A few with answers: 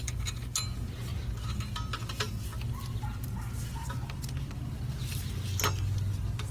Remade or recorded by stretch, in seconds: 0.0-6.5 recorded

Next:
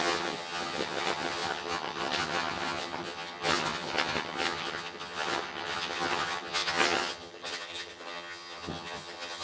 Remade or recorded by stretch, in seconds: 0.0-9.4 remade

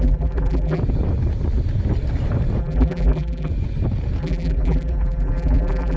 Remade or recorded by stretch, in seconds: 0.0-0.8 remade; 0.8-2.6 recorded; 2.6-3.5 remade; 3.5-4.2 recorded; 4.2-6.0 remade

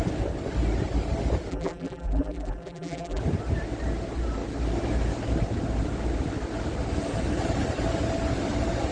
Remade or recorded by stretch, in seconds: 0.0-1.5 recorded; 1.5-3.2 remade; 3.2-8.9 recorded

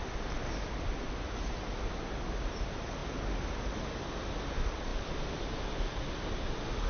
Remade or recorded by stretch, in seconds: 0.0-6.9 recorded

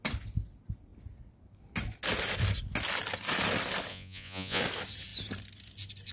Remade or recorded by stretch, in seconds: 0.0-3.9 recorded; 3.9-4.6 remade; 4.6-6.1 recorded